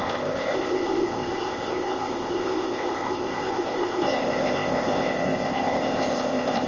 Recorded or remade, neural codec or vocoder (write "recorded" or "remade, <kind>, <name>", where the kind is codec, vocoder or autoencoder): remade, codec, ZipCodec